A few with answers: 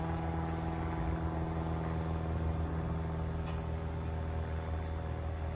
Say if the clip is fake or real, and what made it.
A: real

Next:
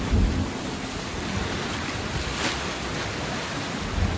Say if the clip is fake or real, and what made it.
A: real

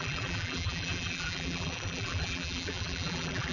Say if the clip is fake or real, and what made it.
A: fake, vocoder, BigVGAN v2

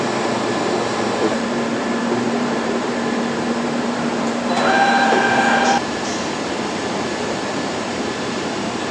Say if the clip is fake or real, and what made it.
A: fake, vocoder, BigVGAN v2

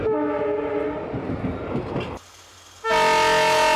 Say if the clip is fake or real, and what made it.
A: real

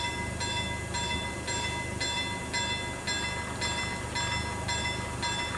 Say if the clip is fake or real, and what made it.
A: real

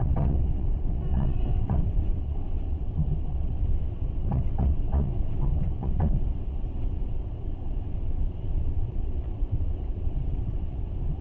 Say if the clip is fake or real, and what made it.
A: fake, vocoder, WaveNeXt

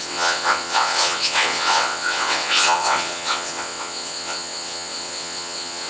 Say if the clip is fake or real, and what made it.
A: fake, vocoder, WaveNeXt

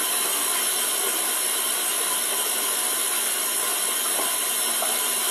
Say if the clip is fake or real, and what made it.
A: real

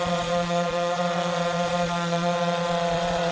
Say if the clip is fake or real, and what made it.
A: fake, vocoder, Vocos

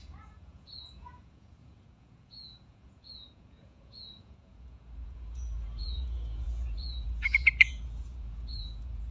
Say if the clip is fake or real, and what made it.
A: fake, vocoder, Vocos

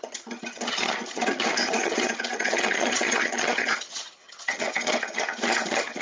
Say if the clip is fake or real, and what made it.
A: fake, vocoder, HiFi-GAN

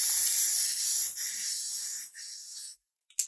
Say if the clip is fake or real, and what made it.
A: real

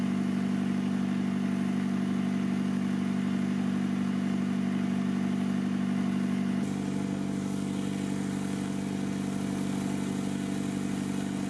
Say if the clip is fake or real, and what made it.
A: real